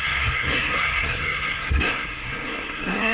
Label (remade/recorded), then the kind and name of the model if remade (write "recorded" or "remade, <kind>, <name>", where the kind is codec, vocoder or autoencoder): remade, codec, SNAC